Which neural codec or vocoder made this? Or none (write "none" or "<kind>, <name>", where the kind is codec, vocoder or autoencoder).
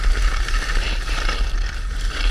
none